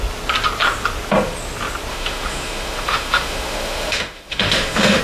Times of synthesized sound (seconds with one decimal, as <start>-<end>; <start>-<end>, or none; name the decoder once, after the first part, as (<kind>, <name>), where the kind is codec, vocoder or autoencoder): 1.9-5.0 (autoencoder, DAC-VAE)